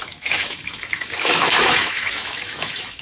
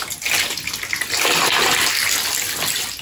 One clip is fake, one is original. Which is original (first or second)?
second